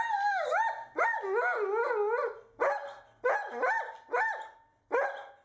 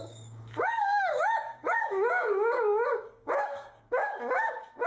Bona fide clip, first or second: first